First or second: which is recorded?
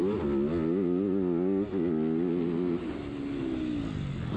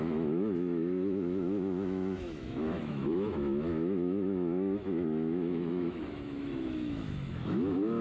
first